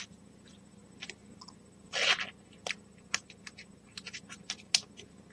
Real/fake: real